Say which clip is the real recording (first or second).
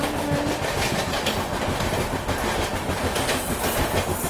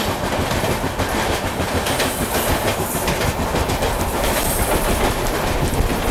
first